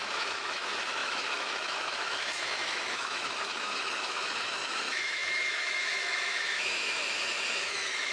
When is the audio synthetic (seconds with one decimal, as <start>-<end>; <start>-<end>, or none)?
0.0-8.1